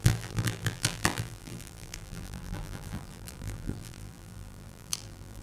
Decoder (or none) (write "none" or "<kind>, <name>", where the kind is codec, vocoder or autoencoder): vocoder, BigVGAN v2